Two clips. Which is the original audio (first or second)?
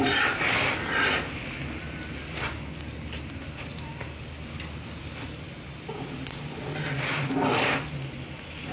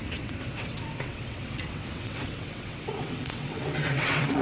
first